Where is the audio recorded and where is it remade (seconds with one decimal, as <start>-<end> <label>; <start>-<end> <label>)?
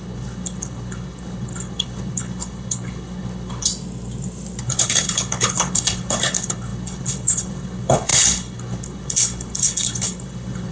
0.0-3.7 remade; 3.7-4.6 recorded; 4.6-10.7 remade